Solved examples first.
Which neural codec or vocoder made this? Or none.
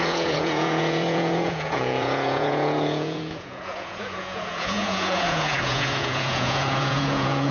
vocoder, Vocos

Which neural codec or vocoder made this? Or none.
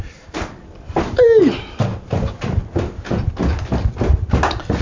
none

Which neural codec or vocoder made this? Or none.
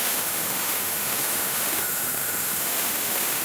autoencoder, DAC-VAE